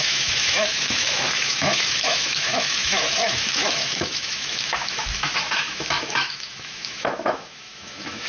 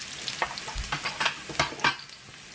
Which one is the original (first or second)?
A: second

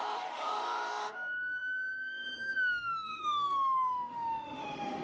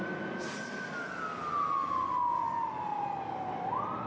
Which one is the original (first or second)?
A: second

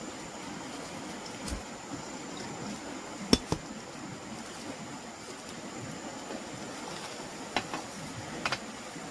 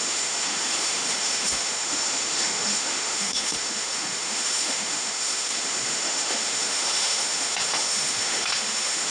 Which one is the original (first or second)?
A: first